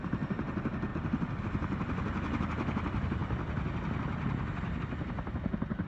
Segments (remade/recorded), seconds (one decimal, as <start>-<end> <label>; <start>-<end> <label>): 0.0-5.9 recorded